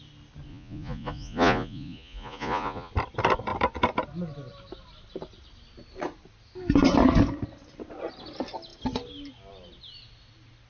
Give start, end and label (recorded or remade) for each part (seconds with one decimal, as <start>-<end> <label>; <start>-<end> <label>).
0.0-0.5 recorded; 0.5-2.9 remade; 2.9-10.7 recorded